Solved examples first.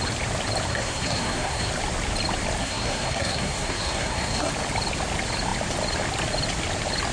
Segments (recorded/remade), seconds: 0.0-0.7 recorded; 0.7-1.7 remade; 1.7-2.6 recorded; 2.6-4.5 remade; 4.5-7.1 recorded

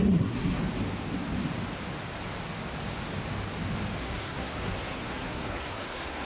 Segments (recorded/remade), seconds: 0.0-0.6 remade; 0.6-4.0 recorded; 4.0-6.2 remade